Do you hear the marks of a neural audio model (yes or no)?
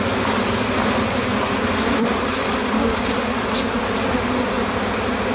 no